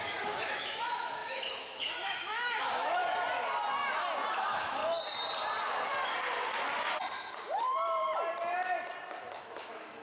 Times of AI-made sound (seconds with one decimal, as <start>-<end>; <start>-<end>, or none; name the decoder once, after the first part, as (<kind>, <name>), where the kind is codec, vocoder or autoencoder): 0.0-3.0 (autoencoder, DAC-VAE); 4.3-4.8; 9.3-10.0